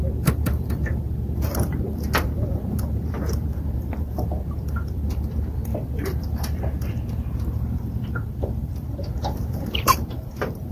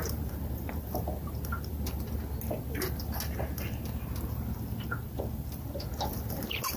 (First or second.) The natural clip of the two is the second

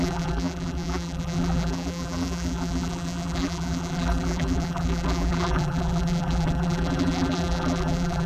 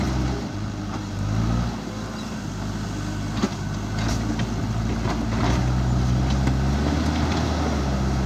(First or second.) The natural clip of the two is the second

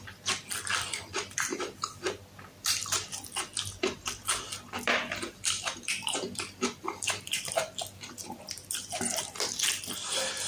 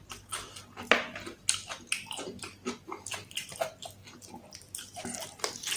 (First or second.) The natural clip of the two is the second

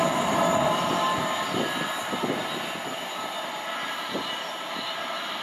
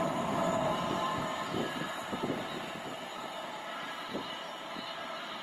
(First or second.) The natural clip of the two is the first